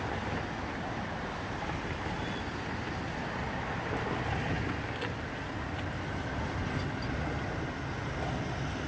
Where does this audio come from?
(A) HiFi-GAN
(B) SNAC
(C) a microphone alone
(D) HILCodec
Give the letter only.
C